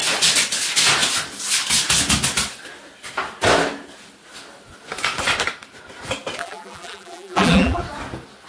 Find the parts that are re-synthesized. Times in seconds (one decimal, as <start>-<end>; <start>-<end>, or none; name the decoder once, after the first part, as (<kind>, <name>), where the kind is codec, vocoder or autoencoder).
6.4-7.8 (vocoder, BigVGAN v2)